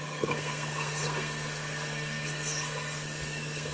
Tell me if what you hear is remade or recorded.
remade